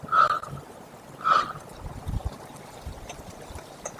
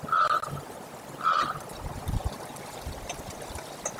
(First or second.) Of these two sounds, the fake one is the first